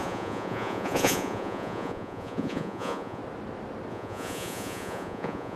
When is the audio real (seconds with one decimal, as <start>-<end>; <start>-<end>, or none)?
3.2-3.9